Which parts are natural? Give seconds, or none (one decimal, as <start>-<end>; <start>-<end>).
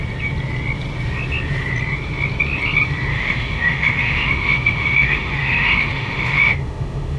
0.0-3.1